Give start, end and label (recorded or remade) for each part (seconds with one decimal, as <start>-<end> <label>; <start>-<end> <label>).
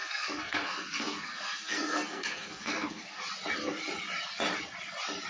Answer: 0.0-3.2 remade; 3.2-5.3 recorded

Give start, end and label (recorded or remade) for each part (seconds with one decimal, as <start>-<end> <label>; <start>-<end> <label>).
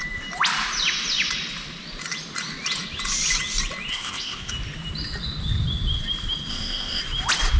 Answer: 0.0-3.9 recorded; 3.9-4.5 remade; 4.5-6.5 recorded; 6.5-7.0 remade; 7.0-7.6 recorded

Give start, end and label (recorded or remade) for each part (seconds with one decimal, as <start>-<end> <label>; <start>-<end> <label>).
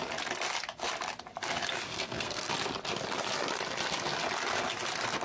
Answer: 0.0-1.9 recorded; 1.9-2.5 remade; 2.5-5.2 recorded